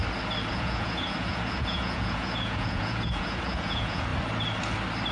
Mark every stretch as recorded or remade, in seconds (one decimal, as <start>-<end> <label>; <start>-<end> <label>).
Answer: 0.0-0.5 recorded; 0.5-4.1 remade; 4.1-5.1 recorded